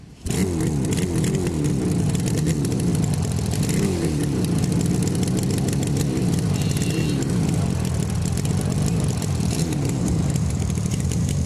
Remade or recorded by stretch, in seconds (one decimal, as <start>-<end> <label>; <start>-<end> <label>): 0.0-0.4 remade; 0.4-2.3 recorded; 2.3-2.9 remade; 2.9-3.8 recorded; 3.8-4.2 remade; 4.2-8.9 recorded; 8.9-11.5 remade